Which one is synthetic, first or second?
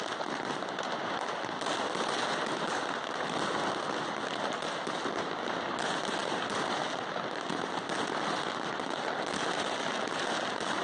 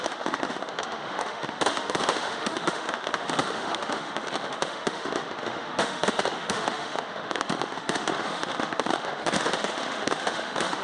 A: second